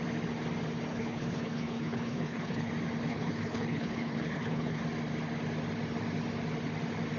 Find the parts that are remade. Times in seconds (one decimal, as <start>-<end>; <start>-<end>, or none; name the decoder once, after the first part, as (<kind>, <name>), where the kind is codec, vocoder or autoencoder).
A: 0.9-2.7 (codec, HILCodec); 3.1-4.8